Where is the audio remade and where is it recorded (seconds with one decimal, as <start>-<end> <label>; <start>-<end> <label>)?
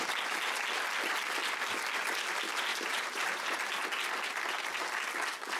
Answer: 0.0-2.7 recorded; 2.7-4.1 remade; 4.1-5.6 recorded